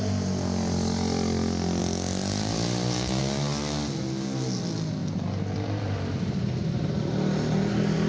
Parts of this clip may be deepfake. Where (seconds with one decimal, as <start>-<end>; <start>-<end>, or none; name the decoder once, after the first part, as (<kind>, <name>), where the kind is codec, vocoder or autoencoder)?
none